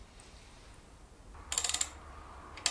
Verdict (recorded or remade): recorded